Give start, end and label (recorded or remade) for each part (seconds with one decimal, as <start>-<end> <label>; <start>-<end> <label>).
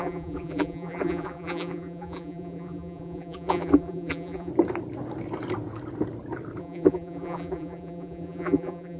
0.0-4.5 remade; 4.5-6.6 recorded; 6.6-9.0 remade